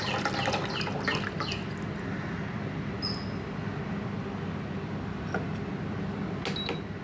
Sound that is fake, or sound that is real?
real